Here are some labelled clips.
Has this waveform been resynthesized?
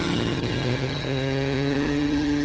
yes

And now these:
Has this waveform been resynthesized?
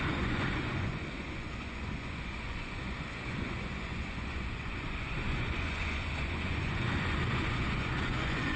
yes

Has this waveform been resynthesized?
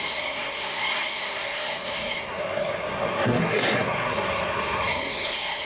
yes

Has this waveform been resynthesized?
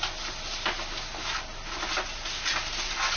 no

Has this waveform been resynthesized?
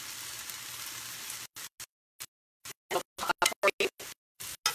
no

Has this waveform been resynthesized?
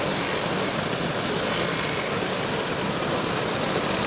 no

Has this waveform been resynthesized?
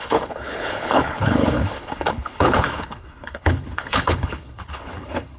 yes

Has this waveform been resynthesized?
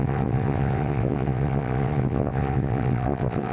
yes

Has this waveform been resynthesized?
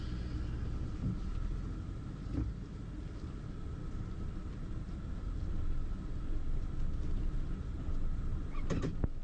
no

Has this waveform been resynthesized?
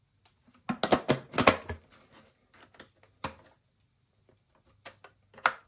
no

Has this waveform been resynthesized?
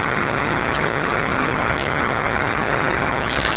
yes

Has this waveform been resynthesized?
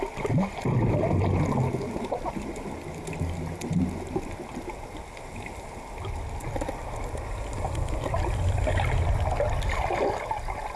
no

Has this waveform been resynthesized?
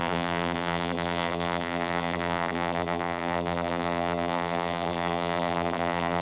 yes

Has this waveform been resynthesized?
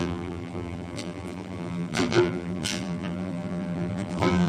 yes